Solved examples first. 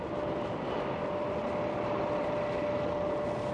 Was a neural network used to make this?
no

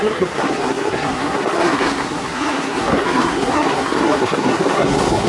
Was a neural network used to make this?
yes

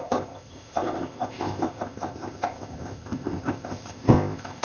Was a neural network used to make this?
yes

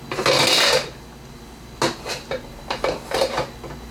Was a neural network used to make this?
no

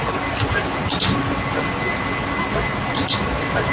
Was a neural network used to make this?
no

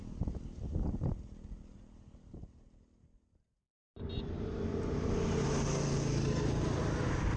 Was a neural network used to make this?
no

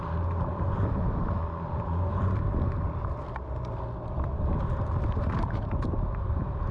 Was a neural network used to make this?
yes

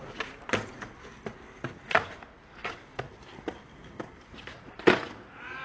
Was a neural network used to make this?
no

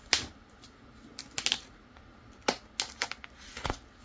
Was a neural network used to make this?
no